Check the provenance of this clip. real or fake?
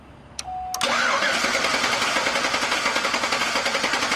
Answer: real